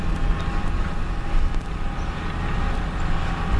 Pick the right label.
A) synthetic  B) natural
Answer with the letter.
B